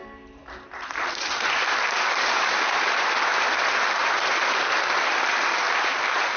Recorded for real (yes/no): yes